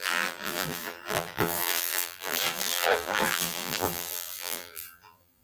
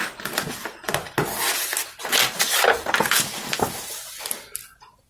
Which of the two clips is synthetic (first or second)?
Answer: first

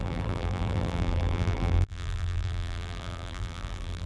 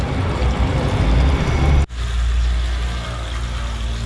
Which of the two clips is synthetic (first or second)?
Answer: first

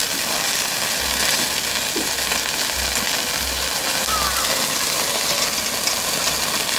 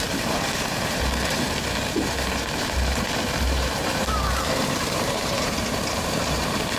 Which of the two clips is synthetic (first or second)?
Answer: second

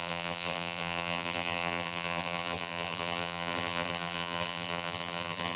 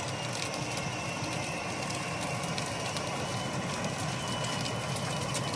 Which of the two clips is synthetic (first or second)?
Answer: first